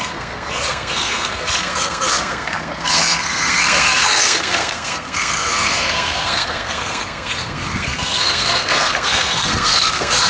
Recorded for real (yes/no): no